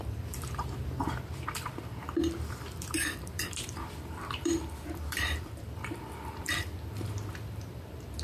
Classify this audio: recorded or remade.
remade